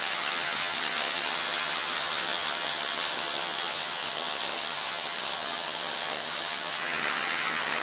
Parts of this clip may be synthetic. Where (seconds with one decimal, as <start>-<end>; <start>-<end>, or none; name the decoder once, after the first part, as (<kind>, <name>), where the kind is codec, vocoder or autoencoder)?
0.0-7.8 (vocoder, HiFi-GAN)